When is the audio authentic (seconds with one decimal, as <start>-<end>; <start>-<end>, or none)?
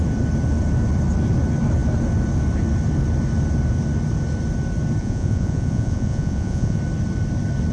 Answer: 0.0-5.0; 6.8-7.7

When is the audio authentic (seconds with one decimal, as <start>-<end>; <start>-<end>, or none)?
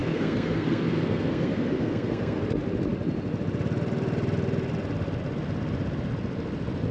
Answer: 2.4-6.9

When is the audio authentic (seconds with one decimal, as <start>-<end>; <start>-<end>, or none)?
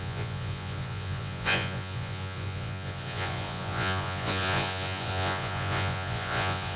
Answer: none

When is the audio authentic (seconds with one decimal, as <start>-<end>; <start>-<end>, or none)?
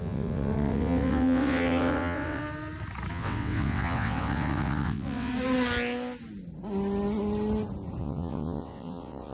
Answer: 2.4-3.1; 5.3-8.0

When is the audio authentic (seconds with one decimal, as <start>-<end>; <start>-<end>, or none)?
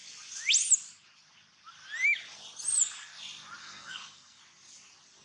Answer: 0.0-3.6; 4.4-5.2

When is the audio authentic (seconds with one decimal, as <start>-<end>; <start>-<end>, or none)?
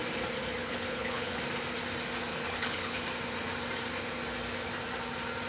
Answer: 0.0-0.6; 1.4-2.3; 3.0-5.5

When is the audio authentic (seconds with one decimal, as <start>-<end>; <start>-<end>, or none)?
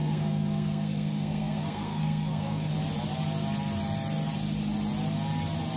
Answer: 2.7-5.8